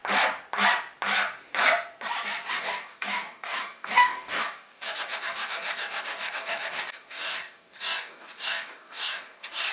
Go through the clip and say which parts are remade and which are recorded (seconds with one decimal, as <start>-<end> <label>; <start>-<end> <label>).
0.0-2.5 recorded; 2.5-9.7 remade